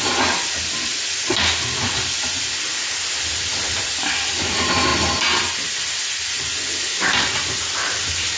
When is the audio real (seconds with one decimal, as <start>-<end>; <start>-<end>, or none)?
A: 0.0-8.4

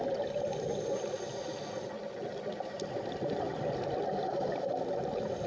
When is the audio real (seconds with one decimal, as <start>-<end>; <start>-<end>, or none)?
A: 0.0-5.5

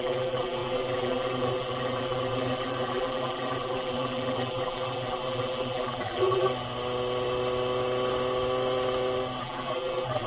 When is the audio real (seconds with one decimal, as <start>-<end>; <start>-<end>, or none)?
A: 6.5-9.4

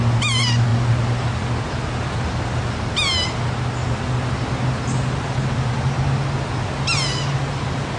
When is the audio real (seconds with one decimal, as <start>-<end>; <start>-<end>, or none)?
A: 0.0-8.0